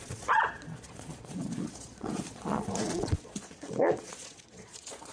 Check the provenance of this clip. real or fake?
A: fake